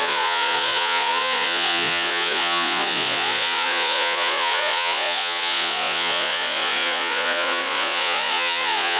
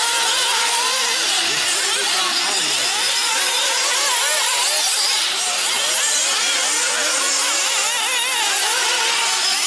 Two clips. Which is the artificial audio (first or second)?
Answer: first